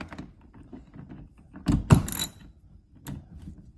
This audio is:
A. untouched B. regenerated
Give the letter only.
A